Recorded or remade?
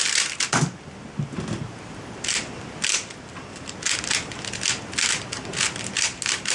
recorded